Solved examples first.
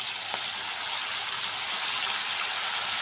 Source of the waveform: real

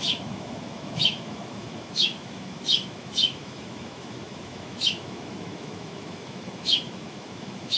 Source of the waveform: fake